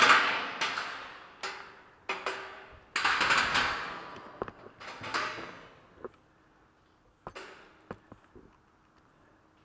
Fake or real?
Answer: real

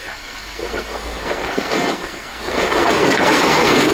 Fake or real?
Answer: fake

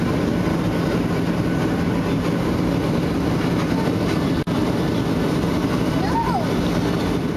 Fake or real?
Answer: real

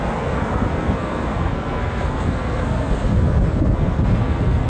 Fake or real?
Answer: fake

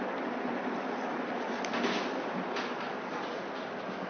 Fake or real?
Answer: real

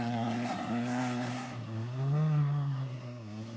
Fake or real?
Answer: fake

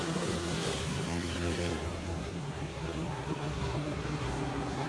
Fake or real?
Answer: fake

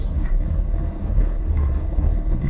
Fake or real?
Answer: fake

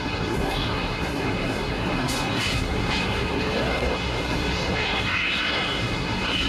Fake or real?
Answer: fake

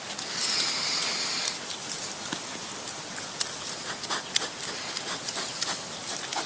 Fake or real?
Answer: real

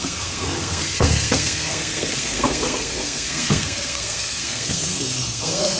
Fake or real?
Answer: fake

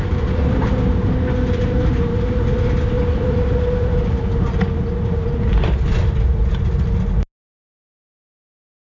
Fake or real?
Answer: real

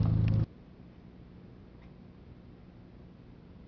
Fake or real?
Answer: real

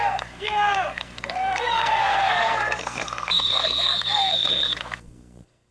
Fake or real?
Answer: fake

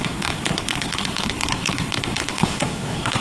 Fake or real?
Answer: fake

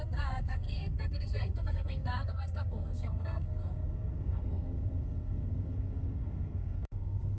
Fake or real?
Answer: fake